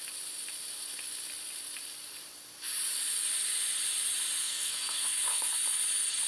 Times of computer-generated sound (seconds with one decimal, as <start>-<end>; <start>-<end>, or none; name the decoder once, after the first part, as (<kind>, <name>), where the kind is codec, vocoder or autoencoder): 4.4-5.6 (codec, SNAC)